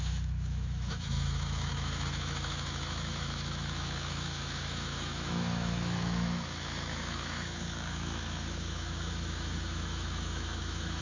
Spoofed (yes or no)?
yes